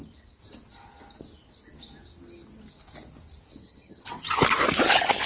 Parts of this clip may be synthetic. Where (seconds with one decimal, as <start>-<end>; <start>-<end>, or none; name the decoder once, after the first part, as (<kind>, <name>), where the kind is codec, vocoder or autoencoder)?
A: 3.6-4.4 (vocoder, HiFi-GAN)